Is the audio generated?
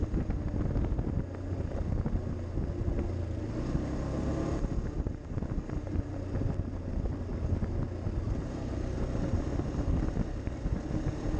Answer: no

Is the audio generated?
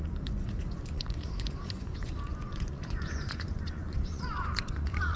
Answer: yes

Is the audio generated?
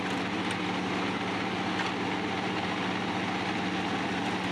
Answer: no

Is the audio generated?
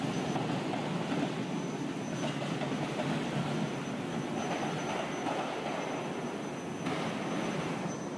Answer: no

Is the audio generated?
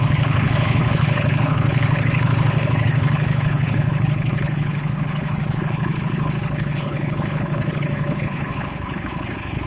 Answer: yes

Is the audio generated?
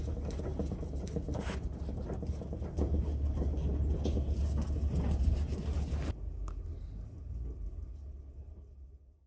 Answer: no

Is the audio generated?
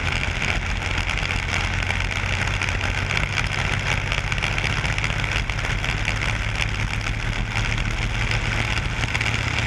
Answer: no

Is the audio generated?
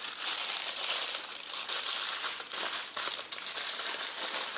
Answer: no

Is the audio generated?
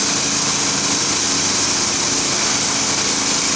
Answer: no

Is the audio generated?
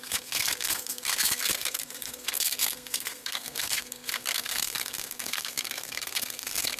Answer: yes